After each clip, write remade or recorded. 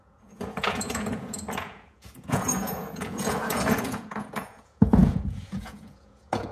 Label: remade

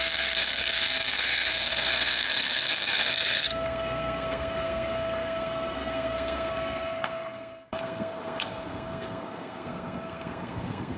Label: remade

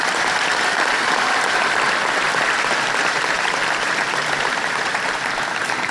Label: remade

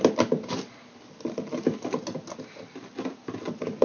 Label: recorded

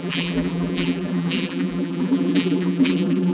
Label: remade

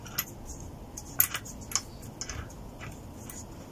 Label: recorded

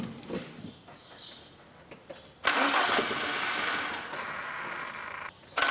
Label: recorded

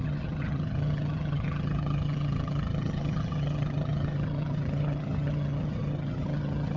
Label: remade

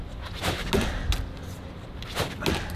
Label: recorded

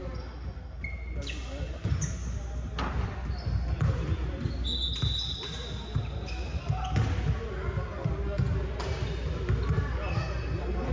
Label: recorded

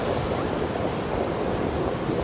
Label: recorded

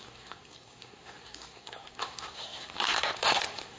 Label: remade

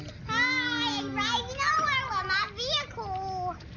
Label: recorded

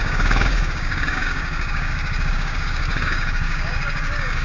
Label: remade